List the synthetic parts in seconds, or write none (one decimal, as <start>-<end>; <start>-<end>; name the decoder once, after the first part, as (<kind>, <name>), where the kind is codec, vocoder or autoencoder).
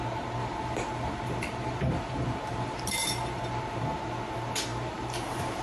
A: 0.4-3.8 (vocoder, BigVGAN v2); 4.7-5.6